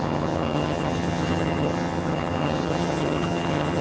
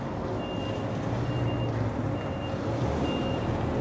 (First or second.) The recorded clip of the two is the second